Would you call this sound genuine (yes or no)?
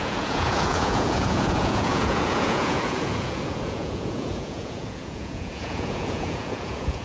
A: no